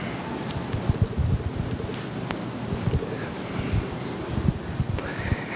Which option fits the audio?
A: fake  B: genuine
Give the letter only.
B